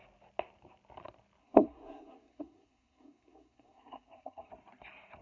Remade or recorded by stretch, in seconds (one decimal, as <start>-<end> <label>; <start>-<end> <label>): 0.0-1.4 recorded; 1.4-4.5 remade; 4.5-5.2 recorded